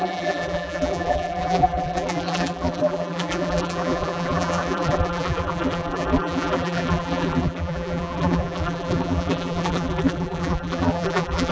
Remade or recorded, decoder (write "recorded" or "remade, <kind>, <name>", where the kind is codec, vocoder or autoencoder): remade, vocoder, BigVGAN v2